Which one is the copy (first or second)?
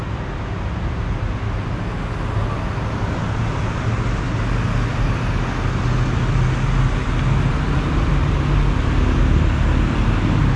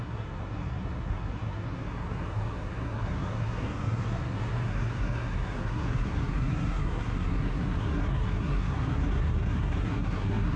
second